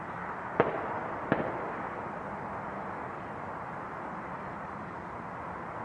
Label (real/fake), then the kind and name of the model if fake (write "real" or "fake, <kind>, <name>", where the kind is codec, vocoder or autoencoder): real